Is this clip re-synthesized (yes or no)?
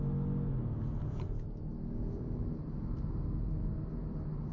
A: no